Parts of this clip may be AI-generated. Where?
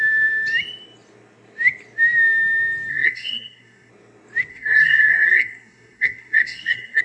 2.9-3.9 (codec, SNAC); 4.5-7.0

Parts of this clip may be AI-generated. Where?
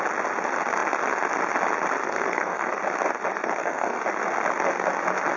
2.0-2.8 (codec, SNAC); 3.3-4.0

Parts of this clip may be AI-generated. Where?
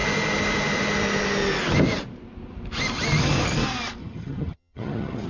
4.0-5.3 (vocoder, HiFi-GAN)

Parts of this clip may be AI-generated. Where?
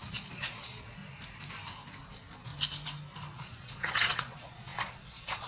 0.0-1.0 (vocoder, Vocos); 2.0-2.5; 3.3-5.5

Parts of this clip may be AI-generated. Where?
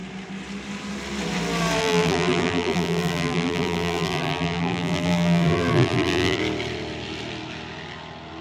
1.8-6.4 (vocoder, BigVGAN v2)